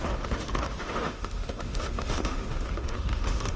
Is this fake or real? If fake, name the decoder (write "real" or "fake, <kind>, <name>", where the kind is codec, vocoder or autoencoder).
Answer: fake, autoencoder, DAC-VAE